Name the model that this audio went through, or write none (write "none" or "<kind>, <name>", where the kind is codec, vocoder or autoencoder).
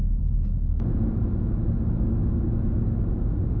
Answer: none